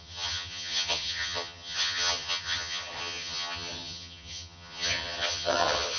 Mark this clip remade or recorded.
remade